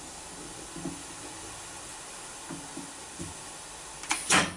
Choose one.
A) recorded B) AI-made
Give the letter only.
A